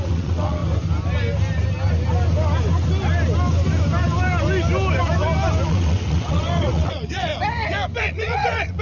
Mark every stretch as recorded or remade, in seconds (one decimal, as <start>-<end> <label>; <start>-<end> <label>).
0.0-0.6 remade; 0.6-5.7 recorded; 5.7-7.3 remade; 7.3-8.0 recorded; 8.0-8.8 remade